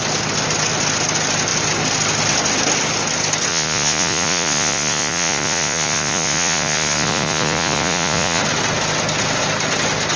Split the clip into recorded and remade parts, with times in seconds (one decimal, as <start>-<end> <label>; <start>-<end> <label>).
0.0-3.5 recorded; 3.5-8.4 remade; 8.4-10.2 recorded